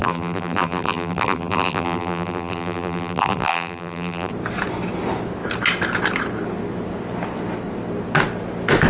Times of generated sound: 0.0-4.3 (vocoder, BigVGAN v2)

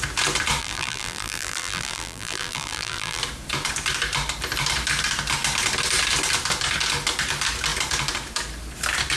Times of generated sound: 0.6-3.2 (vocoder, BigVGAN v2)

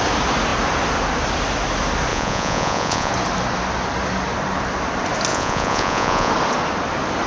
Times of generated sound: 2.1-3.1 (vocoder, Vocos); 5.3-6.3

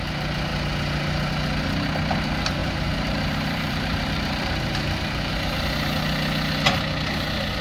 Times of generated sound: 2.6-5.3 (vocoder, BigVGAN v2)

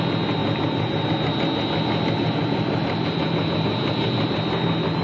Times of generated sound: none